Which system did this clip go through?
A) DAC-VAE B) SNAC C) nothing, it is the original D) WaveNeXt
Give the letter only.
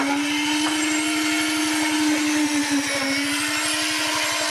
C